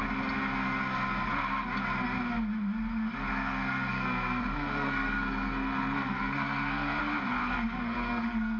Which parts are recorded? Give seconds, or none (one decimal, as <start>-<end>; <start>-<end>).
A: 0.0-3.3; 7.0-7.4